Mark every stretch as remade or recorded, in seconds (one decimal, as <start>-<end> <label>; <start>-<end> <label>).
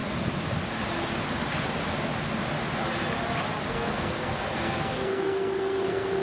0.0-3.7 recorded; 3.7-6.2 remade